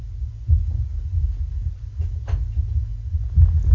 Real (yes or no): yes